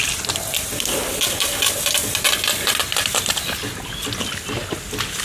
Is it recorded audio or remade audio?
recorded